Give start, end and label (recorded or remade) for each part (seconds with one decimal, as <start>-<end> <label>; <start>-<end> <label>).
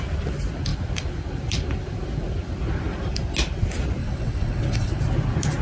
0.0-4.0 recorded; 4.0-5.0 remade; 5.0-5.6 recorded